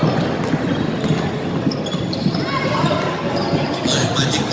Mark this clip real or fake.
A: real